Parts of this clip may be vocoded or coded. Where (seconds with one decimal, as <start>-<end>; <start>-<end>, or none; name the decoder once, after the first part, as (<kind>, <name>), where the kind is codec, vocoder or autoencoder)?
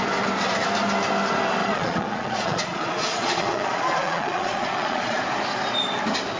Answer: 1.6-5.2 (vocoder, Vocos)